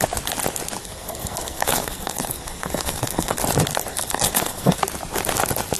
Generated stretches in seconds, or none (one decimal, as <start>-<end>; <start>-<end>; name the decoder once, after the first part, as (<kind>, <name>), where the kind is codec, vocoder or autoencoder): 0.8-3.4 (codec, SNAC); 3.9-4.8